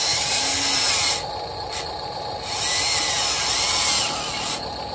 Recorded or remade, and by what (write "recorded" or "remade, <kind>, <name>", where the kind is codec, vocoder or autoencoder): recorded